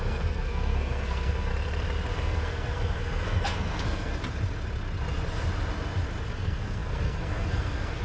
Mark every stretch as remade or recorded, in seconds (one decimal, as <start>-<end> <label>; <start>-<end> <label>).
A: 0.0-1.5 remade; 1.5-2.1 recorded; 2.1-4.1 remade; 4.1-6.3 recorded; 6.3-8.0 remade